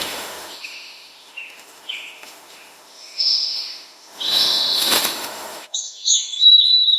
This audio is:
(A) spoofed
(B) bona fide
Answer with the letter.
A